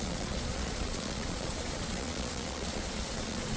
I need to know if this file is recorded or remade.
remade